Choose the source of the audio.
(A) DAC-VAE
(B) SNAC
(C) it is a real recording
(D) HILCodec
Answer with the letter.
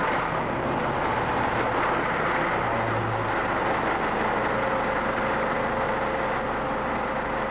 C